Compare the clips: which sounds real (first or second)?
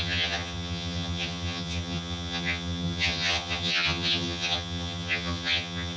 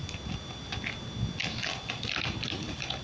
second